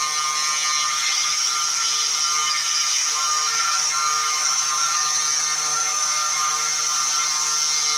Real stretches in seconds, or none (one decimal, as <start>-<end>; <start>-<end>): 0.0-0.9; 1.9-2.4; 5.2-5.7; 6.5-8.0